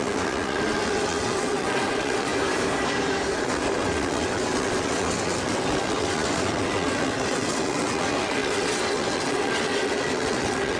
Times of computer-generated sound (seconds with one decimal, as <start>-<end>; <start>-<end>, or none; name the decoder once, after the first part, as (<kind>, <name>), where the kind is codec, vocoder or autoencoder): 0.0-2.3 (vocoder, WaveNeXt); 3.3-10.8